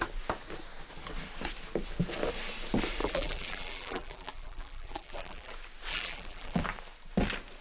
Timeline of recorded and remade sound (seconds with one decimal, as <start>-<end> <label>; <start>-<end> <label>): 0.0-3.0 recorded; 3.0-5.5 remade; 5.5-5.9 recorded; 5.9-6.6 remade; 6.6-7.6 recorded

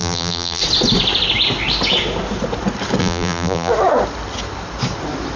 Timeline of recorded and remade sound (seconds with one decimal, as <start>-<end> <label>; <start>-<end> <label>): 0.0-0.6 remade; 0.6-3.0 recorded; 3.0-3.7 remade; 3.7-5.4 recorded

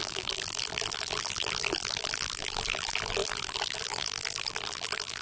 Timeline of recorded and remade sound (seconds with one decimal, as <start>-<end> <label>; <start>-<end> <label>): 0.0-5.2 remade

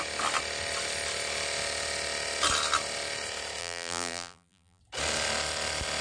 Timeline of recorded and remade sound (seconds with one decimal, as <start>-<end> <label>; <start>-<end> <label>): 0.0-3.6 recorded; 3.6-4.8 remade; 4.8-6.0 recorded